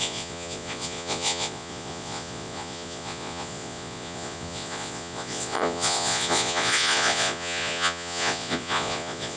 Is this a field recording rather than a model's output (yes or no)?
no